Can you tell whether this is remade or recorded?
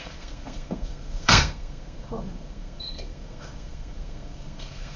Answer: remade